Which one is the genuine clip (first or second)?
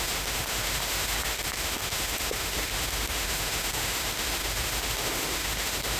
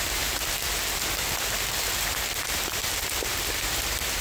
second